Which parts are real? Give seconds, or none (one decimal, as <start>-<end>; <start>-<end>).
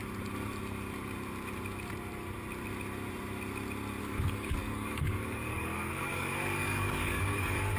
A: 0.0-4.0